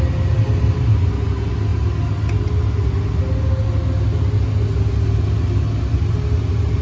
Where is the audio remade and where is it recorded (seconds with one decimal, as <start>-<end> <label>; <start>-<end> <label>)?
0.0-6.8 recorded